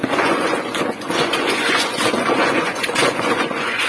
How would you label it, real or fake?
fake